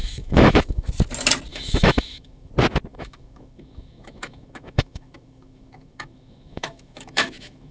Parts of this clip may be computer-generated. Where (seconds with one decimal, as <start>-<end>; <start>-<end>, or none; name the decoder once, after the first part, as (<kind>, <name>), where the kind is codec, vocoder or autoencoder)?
0.0-0.9 (autoencoder, DAC-VAE); 1.5-2.5; 2.9-7.7